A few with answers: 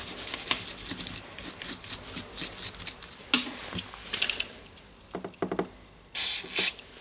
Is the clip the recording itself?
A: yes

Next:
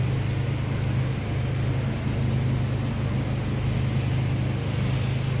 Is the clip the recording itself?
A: yes